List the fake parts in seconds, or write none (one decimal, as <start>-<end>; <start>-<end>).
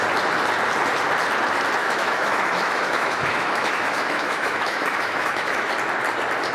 1.8-5.7